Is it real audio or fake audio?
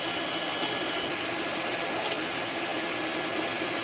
real